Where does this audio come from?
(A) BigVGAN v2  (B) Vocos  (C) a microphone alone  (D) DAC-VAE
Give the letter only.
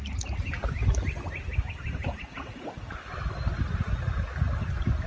C